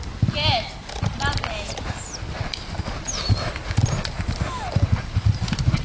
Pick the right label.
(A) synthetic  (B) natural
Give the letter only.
B